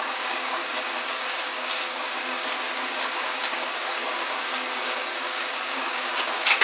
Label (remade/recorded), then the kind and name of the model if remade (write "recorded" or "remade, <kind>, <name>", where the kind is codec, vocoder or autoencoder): remade, codec, DAC